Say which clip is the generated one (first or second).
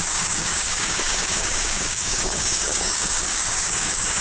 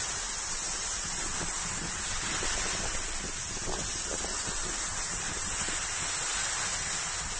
first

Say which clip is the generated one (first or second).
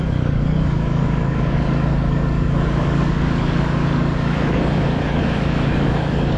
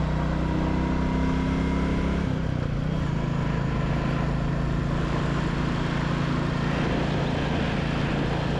first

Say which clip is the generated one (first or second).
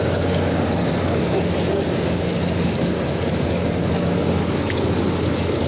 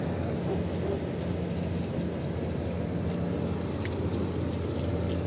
first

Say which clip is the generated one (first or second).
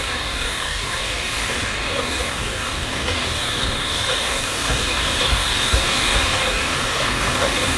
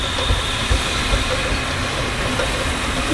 first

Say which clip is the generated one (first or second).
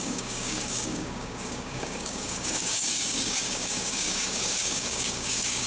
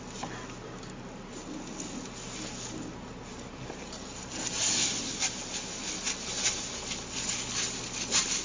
first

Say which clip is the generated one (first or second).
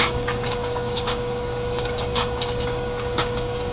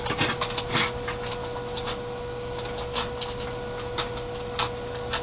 first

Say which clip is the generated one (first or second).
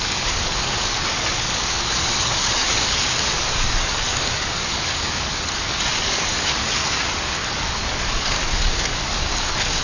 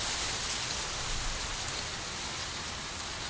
first